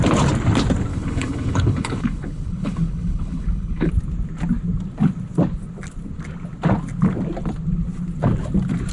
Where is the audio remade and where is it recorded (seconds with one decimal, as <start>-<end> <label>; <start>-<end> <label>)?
0.0-0.9 recorded; 0.9-3.9 remade; 3.9-8.9 recorded